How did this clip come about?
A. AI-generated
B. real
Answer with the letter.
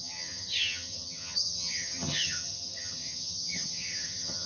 A